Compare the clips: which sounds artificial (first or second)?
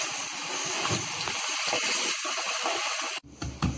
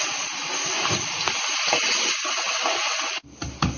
first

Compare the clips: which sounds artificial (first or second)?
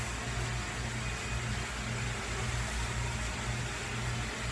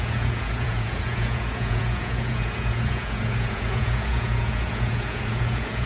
second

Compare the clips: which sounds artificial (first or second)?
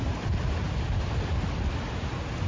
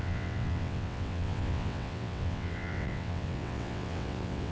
second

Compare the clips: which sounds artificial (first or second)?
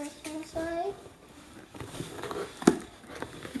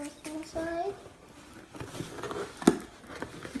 first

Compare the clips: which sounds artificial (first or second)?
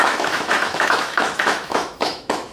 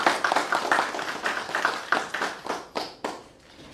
first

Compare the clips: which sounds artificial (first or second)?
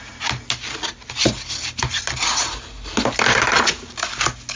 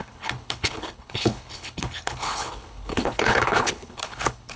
second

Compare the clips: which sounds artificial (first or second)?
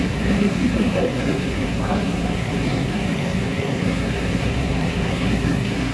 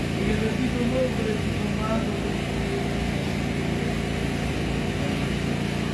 first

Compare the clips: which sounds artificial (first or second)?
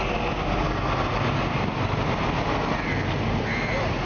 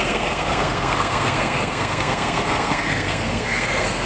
second